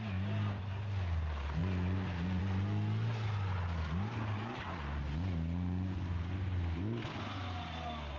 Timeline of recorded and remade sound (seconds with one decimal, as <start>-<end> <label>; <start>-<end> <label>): 0.0-8.2 recorded